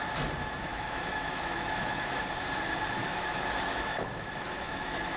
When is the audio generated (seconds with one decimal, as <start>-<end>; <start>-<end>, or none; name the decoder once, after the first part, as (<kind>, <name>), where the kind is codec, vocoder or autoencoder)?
0.7-2.1 (autoencoder, DAC-VAE); 3.0-5.2